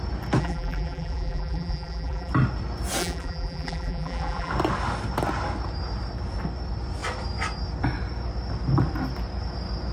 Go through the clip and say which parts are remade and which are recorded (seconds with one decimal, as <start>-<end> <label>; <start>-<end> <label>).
0.0-0.4 recorded; 0.4-2.3 remade; 2.3-3.0 recorded; 3.0-4.5 remade; 4.5-9.9 recorded